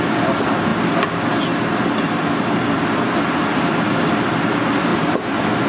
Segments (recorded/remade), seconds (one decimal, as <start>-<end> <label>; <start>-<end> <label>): 0.0-5.7 recorded